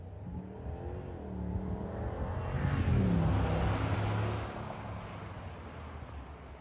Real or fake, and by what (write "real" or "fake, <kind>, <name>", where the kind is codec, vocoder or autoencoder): real